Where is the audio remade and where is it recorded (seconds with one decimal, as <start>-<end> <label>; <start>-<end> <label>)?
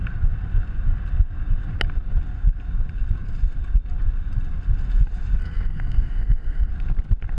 0.0-5.4 recorded; 5.4-6.7 remade; 6.7-7.4 recorded